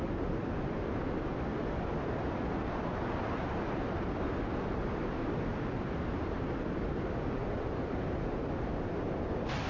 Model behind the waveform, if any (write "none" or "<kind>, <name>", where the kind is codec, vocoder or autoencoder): none